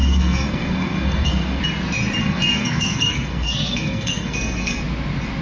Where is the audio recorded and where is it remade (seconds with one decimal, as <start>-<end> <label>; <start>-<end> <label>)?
0.0-1.6 remade; 1.6-2.2 recorded; 2.2-4.8 remade; 4.8-5.4 recorded